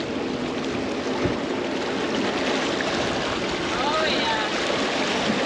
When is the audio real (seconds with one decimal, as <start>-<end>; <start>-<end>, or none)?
0.0-5.5